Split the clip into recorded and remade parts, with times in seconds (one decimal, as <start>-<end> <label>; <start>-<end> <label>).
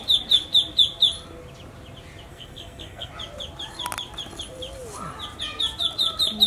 0.0-2.3 recorded; 2.3-3.1 remade; 3.1-6.5 recorded